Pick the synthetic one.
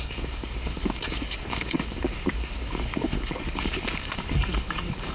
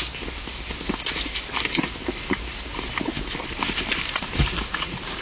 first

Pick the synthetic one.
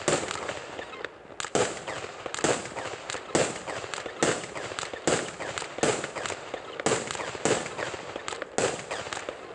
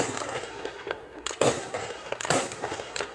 second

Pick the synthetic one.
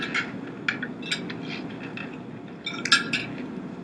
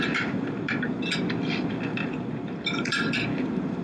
second